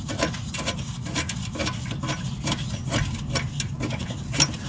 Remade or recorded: recorded